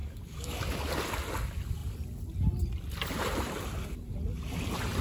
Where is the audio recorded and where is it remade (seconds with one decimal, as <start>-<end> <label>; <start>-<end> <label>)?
0.0-0.6 remade; 0.6-5.0 recorded